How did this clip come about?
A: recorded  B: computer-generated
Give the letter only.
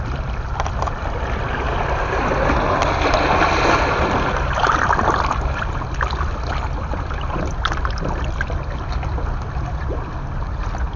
A